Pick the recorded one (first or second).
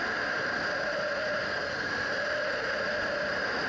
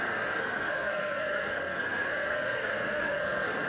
first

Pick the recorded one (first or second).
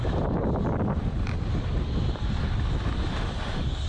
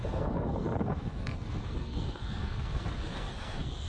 first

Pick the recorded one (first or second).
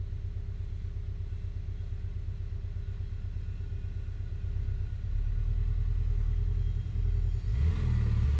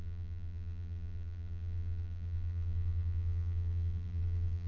first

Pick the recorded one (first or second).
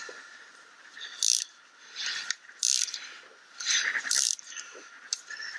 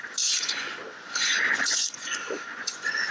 first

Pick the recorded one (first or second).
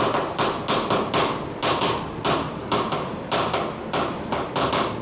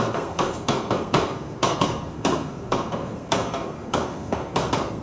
first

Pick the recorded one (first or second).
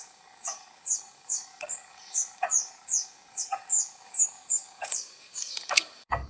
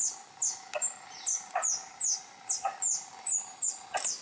second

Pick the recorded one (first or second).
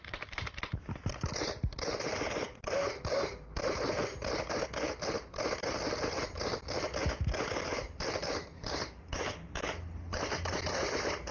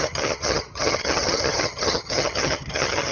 first